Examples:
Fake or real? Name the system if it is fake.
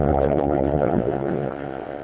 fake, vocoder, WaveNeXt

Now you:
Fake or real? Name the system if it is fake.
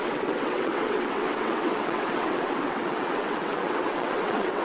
fake, vocoder, WaveNeXt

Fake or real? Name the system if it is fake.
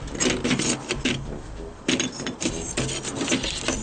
real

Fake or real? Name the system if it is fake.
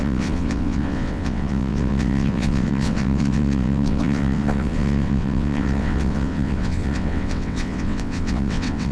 fake, vocoder, WaveNeXt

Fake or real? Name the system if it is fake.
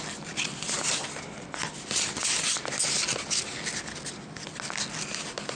real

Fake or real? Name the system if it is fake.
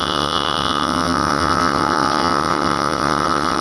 fake, vocoder, WaveNeXt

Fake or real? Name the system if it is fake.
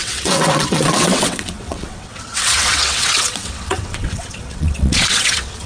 fake, vocoder, WaveNeXt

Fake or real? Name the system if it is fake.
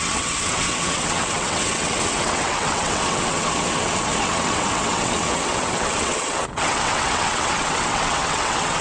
fake, vocoder, WaveNeXt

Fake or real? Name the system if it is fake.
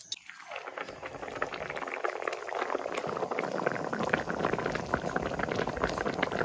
real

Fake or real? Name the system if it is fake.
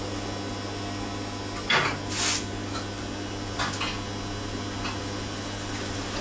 real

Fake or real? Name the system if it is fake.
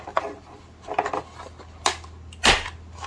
real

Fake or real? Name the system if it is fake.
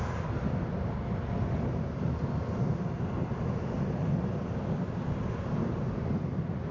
real